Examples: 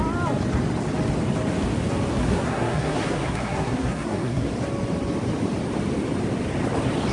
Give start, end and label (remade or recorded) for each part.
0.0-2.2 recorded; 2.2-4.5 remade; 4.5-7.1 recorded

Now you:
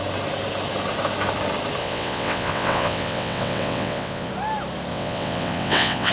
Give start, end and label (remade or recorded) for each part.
0.0-1.8 recorded; 1.8-4.3 remade; 4.3-4.9 recorded; 4.9-6.1 remade

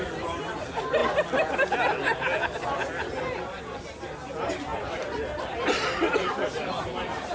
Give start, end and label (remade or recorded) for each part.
0.0-7.3 recorded

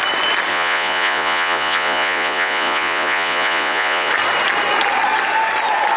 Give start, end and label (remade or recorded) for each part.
0.0-0.5 recorded; 0.5-4.1 remade; 4.1-6.0 recorded

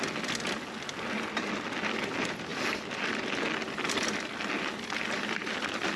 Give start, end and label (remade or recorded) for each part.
0.0-6.0 recorded